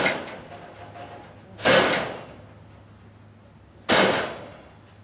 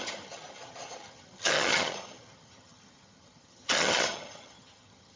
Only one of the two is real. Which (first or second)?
first